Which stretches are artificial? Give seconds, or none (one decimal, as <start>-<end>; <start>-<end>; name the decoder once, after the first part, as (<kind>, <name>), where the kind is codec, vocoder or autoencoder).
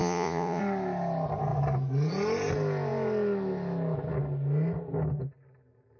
0.0-0.6 (vocoder, Vocos)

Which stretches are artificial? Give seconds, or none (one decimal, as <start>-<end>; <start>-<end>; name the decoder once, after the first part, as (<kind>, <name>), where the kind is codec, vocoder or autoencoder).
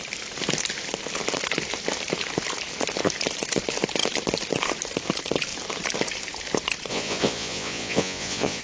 6.9-8.6 (vocoder, Vocos)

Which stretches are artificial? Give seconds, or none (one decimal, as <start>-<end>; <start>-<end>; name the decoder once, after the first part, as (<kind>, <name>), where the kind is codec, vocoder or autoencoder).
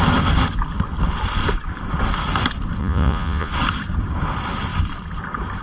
2.8-3.5 (vocoder, Vocos)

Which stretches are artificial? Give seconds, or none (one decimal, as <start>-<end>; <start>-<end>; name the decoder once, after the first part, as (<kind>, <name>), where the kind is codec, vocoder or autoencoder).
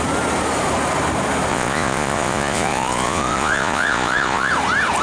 1.5-4.5 (vocoder, Vocos)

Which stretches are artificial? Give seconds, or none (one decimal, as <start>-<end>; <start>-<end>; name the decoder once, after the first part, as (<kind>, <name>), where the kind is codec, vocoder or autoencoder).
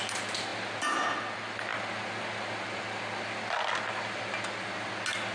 none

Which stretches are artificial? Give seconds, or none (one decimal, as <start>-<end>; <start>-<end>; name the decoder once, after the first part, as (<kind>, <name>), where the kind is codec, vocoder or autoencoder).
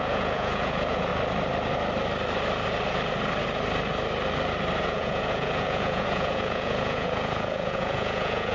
0.0-1.1 (vocoder, Vocos); 4.8-8.5